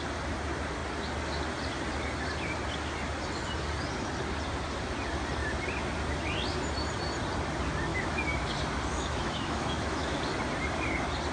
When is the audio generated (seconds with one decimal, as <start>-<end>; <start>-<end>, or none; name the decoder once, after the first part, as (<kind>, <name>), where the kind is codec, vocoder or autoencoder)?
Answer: 7.9-8.5 (autoencoder, DAC-VAE); 8.9-10.2